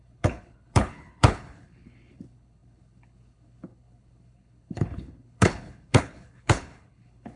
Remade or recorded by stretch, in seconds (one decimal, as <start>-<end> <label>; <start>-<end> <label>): 0.0-7.4 remade